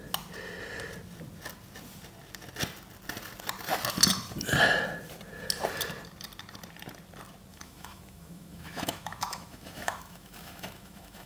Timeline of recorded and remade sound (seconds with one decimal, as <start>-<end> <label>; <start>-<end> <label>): 0.0-7.5 recorded; 7.5-11.3 remade